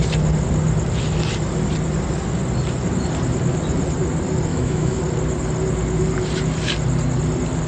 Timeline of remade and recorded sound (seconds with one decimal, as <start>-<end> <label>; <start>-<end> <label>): 0.0-4.5 recorded; 4.5-5.0 remade; 5.0-7.7 recorded